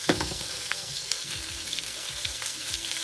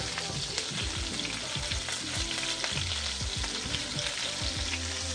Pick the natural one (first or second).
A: second